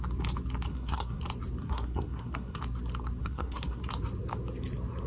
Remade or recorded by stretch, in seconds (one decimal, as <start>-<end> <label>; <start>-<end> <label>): 0.0-0.7 recorded; 0.7-1.2 remade; 1.2-1.6 recorded; 1.6-2.6 remade; 2.6-3.2 recorded; 3.2-3.8 remade; 3.8-5.1 recorded